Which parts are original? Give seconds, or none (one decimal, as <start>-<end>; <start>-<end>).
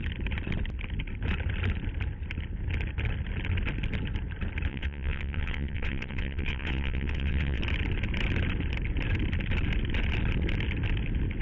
0.0-4.7; 7.6-11.4